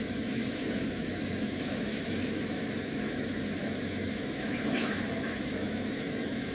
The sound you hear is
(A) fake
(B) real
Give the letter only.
A